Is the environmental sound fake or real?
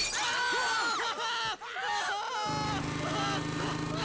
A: real